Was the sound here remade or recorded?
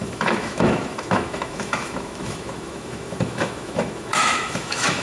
remade